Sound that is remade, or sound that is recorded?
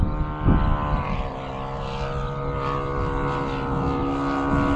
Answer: recorded